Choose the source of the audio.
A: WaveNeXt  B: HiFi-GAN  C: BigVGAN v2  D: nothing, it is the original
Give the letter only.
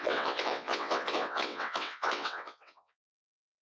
A